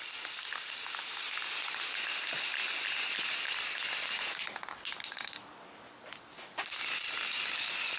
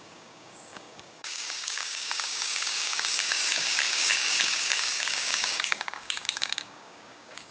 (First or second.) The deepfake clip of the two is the second